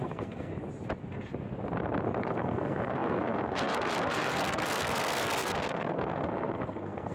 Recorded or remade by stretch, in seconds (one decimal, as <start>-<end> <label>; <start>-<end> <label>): 0.0-0.5 remade; 0.5-2.2 recorded; 2.2-7.1 remade